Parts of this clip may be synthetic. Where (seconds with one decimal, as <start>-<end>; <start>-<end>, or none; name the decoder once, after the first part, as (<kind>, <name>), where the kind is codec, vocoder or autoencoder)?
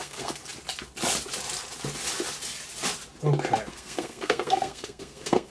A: 0.0-0.4 (codec, SNAC); 3.7-5.5